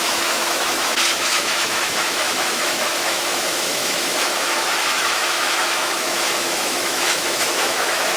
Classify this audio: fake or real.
fake